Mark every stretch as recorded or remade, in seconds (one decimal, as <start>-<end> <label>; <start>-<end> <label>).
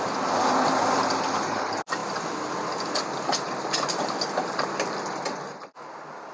0.0-6.3 recorded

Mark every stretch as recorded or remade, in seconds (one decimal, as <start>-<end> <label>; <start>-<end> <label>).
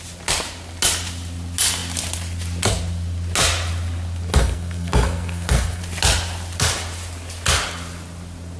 0.0-4.4 recorded; 4.4-5.8 remade; 5.8-8.6 recorded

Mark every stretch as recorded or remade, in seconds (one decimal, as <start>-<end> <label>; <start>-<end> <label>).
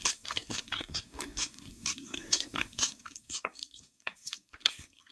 0.0-5.1 remade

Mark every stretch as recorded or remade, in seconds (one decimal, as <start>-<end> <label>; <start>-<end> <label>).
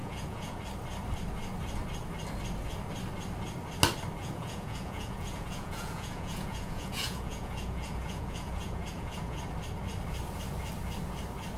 0.0-0.6 remade; 0.6-4.2 recorded; 4.2-9.4 remade; 9.4-11.6 recorded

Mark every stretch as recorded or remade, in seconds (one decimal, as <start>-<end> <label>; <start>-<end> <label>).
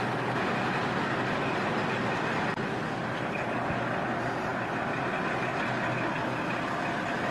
0.0-7.3 recorded